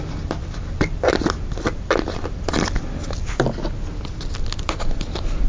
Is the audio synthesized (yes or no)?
no